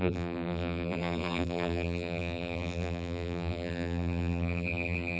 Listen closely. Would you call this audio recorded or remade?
remade